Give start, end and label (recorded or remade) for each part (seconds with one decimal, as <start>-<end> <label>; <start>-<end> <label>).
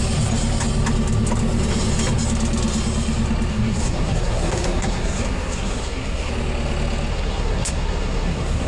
0.0-3.5 recorded; 3.5-6.3 remade; 6.3-7.1 recorded; 7.1-8.7 remade